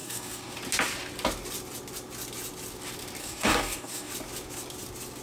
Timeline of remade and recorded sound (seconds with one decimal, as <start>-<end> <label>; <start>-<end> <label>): 0.0-0.6 remade; 0.6-3.2 recorded; 3.2-4.1 remade; 4.1-5.2 recorded